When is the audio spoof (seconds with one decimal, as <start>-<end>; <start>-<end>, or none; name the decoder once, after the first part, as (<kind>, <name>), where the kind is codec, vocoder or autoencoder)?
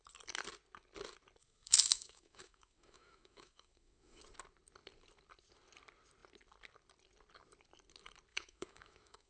1.4-4.2 (autoencoder, DAC-VAE); 8.3-9.3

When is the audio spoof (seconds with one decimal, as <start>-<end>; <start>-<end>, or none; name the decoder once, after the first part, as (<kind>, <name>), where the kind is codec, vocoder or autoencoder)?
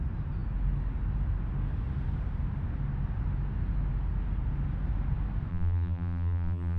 5.5-6.8 (vocoder, BigVGAN v2)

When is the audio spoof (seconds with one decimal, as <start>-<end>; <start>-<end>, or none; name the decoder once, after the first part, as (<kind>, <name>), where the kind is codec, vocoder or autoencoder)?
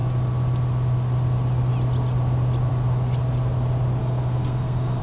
4.0-5.0 (codec, SNAC)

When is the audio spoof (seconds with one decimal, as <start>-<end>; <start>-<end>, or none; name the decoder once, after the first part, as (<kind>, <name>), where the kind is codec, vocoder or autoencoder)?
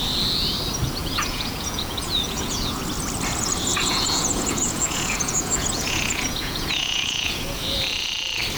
1.0-2.8 (vocoder, Vocos); 3.7-7.8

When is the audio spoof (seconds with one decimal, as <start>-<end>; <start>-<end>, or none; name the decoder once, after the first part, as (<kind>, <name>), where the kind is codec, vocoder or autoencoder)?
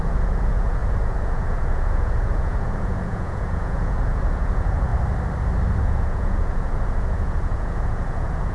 0.0-4.9 (vocoder, Vocos); 5.8-8.5